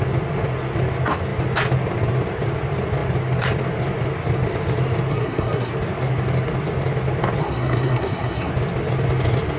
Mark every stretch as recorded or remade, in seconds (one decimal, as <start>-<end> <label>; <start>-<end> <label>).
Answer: 0.0-5.1 recorded; 5.1-5.7 remade; 5.7-7.4 recorded; 7.4-8.5 remade; 8.5-9.6 recorded